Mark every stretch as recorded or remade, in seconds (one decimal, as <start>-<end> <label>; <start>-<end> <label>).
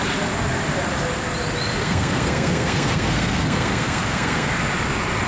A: 0.0-1.8 recorded; 1.8-4.5 remade; 4.5-5.3 recorded